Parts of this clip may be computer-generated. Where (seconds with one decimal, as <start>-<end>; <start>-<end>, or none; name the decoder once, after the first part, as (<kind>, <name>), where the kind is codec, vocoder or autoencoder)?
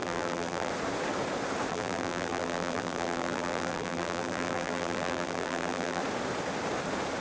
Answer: 0.0-0.7 (vocoder, BigVGAN v2); 1.7-6.0